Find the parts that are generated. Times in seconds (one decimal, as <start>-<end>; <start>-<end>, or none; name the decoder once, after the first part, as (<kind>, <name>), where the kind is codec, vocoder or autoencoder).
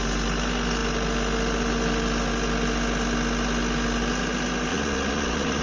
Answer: 4.7-5.6 (vocoder, Vocos)